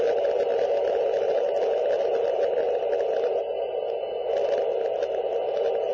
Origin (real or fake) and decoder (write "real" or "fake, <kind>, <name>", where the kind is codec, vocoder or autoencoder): real